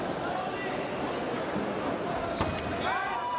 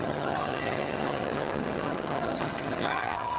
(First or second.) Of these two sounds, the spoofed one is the second